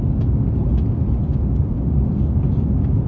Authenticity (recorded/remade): recorded